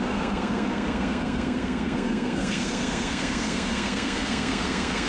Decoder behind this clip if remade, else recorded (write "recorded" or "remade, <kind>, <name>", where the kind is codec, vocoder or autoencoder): remade, codec, SNAC